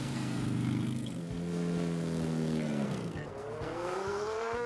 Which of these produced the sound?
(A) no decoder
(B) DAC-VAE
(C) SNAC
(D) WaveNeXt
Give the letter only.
C